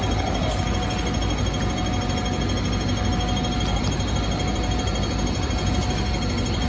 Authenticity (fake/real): real